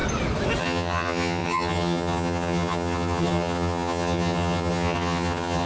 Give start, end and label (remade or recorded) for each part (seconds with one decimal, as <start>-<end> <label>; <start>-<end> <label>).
0.0-0.6 recorded; 0.6-5.7 remade